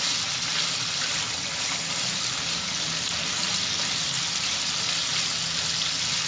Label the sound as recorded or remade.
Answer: recorded